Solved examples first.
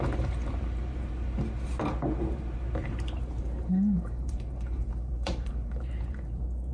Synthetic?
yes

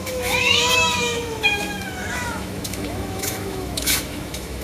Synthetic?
yes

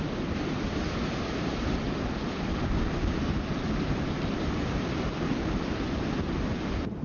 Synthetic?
no